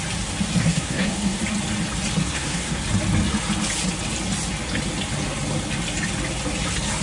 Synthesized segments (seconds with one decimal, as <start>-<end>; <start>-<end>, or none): 0.6-1.4; 2.2-2.8